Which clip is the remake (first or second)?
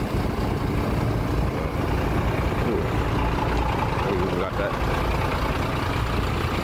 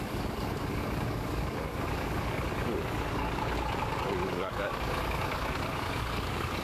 second